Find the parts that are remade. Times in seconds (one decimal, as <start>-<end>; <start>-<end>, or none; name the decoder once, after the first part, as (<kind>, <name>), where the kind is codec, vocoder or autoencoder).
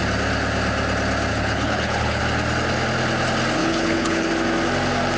1.3-2.2 (codec, HILCodec); 3.6-4.3